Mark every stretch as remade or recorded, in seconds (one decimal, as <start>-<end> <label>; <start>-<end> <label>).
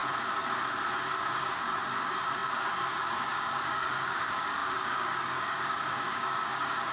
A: 0.0-1.2 recorded; 1.2-6.9 remade